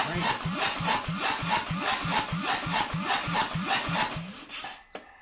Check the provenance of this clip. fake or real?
real